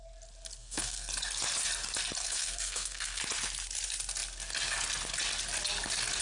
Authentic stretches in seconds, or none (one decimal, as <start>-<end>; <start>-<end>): 0.0-0.6; 1.1-2.2; 3.2-6.2